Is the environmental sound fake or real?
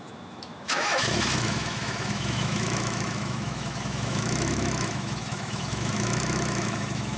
fake